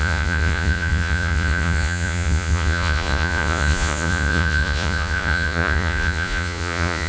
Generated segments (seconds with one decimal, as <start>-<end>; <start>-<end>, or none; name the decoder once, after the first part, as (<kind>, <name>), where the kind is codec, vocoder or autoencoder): 0.0-7.1 (vocoder, Vocos)